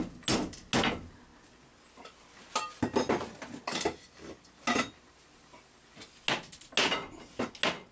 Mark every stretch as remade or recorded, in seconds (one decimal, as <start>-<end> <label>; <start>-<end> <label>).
0.0-7.9 recorded